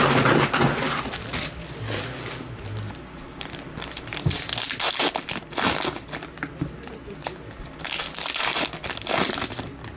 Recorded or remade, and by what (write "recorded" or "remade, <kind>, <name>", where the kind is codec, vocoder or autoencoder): recorded